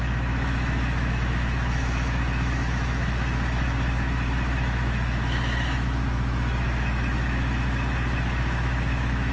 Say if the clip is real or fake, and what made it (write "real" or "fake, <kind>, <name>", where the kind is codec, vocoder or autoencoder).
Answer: fake, autoencoder, DAC-VAE